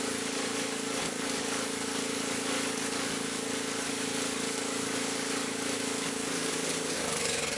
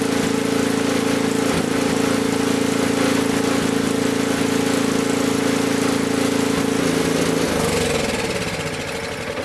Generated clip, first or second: first